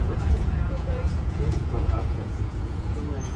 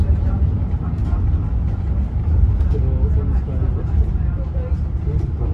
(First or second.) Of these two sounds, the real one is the second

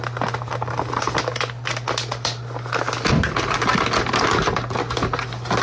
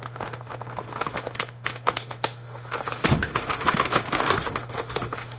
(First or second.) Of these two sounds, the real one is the first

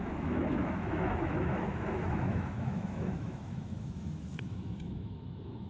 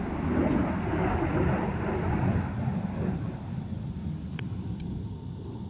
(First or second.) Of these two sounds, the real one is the second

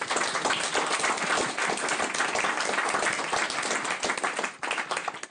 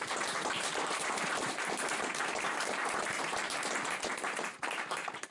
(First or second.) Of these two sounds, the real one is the first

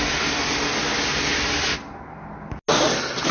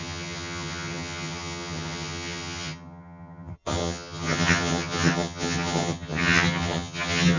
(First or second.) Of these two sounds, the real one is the first